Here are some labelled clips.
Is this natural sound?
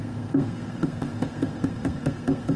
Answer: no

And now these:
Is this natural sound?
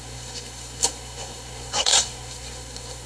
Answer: no